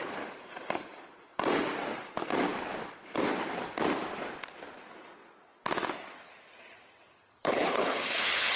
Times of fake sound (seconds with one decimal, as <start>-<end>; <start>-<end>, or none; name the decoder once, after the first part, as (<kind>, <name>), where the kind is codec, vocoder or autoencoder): 7.4-8.6 (codec, HILCodec)